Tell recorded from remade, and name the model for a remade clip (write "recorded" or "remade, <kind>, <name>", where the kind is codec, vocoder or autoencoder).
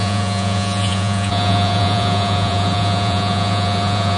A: remade, vocoder, Vocos